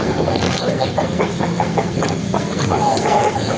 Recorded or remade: remade